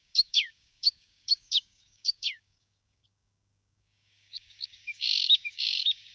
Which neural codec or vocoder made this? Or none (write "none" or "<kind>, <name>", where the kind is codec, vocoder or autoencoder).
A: codec, DAC